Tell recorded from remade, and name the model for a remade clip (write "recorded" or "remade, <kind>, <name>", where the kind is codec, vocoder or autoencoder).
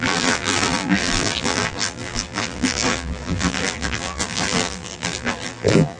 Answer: remade, vocoder, BigVGAN v2